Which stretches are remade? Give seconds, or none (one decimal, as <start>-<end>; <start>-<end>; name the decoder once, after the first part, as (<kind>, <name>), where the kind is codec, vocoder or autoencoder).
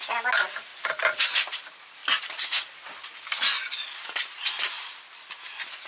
none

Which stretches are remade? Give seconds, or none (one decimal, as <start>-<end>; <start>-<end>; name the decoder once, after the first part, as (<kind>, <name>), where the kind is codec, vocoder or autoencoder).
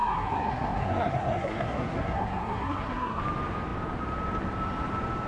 0.0-3.2 (codec, SNAC)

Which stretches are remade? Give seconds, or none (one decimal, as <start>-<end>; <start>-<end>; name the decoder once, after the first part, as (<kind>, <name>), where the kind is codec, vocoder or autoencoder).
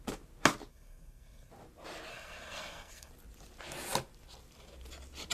0.7-1.5 (codec, SNAC); 2.1-3.1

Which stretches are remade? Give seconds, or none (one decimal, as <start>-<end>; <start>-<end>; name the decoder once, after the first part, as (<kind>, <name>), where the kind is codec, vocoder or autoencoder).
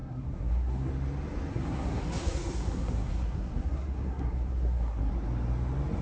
0.0-0.9 (codec, SNAC); 1.5-5.1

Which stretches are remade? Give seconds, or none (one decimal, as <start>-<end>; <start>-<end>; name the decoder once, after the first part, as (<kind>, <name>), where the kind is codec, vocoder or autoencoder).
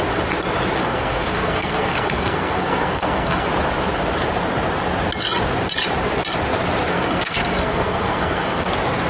0.8-3.5 (codec, SNAC); 6.9-8.7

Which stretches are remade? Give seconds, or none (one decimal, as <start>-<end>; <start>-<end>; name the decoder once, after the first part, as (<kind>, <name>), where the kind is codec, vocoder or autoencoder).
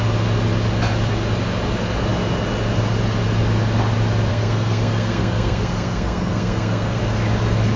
4.3-7.0 (codec, SNAC)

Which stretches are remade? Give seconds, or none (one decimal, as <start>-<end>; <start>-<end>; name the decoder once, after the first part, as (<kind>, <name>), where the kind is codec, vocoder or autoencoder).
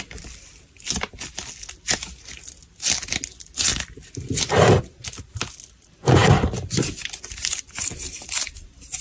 none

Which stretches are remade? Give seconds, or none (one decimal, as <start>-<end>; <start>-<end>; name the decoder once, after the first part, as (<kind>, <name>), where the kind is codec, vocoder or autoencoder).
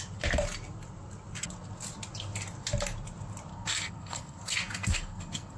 3.5-5.6 (codec, SNAC)